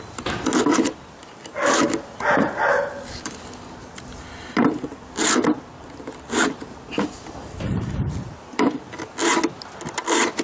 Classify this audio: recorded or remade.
recorded